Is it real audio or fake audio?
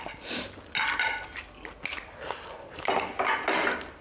real